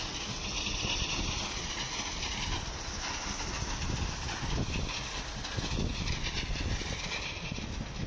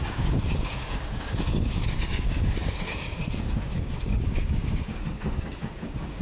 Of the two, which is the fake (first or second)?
second